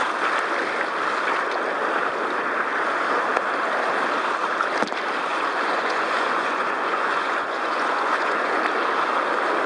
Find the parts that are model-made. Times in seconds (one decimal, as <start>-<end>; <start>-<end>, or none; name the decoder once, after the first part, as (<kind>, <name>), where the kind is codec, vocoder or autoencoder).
5.3-8.6 (vocoder, Vocos)